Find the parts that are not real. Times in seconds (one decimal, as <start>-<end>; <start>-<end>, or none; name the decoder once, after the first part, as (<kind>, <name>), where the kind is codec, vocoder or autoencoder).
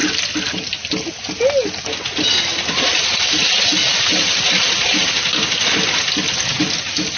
none